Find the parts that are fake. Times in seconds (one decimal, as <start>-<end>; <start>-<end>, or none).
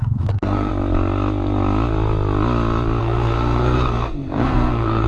0.0-0.7; 3.0-5.1